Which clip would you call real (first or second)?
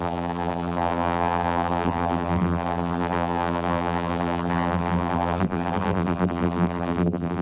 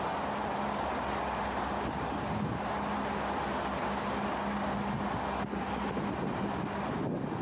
second